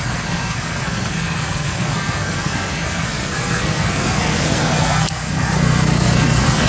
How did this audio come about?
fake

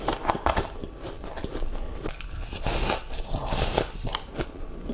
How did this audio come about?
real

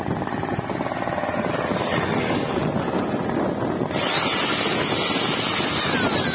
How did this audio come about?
real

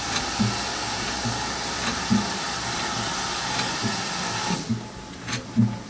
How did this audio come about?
real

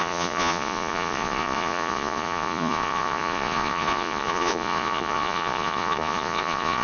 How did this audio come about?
fake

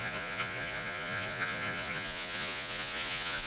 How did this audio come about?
fake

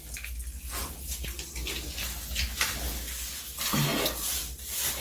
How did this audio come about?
real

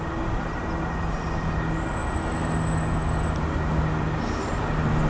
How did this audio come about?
real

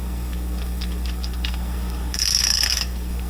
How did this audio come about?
fake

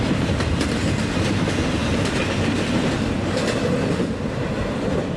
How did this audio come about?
real